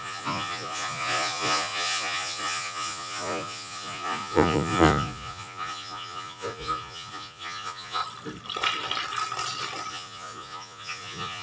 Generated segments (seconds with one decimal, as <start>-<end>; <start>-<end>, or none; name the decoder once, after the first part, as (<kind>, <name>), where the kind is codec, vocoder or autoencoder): 0.0-8.0 (vocoder, Vocos); 9.9-11.4